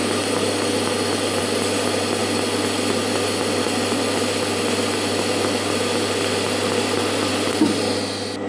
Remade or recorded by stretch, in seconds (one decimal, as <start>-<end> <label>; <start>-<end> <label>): 0.0-8.5 recorded

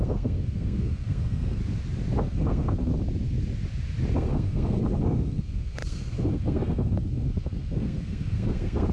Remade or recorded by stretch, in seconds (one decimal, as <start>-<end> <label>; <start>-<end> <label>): 0.0-1.6 remade; 1.6-2.2 recorded; 2.2-2.9 remade; 2.9-4.1 recorded; 4.1-8.9 remade